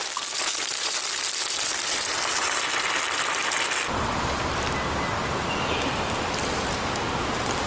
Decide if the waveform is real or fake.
real